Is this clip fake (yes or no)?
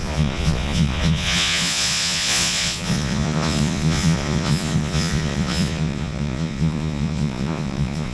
yes